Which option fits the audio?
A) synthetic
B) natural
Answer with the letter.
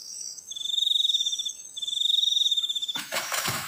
A